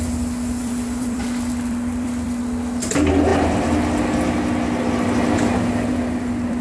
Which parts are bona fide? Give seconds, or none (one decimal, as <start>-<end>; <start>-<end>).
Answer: 0.0-0.6; 2.4-5.9